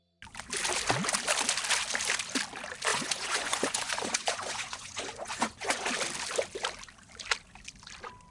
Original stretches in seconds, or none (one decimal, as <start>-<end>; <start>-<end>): 0.0-2.9; 5.9-8.3